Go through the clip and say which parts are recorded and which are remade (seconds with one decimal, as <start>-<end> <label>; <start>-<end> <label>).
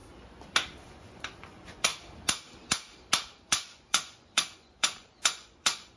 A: 0.0-0.8 recorded; 0.8-1.9 remade; 1.9-3.3 recorded; 3.3-6.0 remade